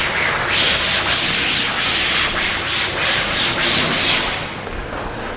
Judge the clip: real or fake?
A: real